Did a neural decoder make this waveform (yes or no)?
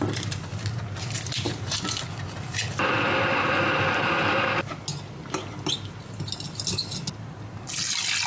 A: no